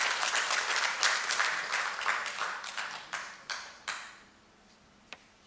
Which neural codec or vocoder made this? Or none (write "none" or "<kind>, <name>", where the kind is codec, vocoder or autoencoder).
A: none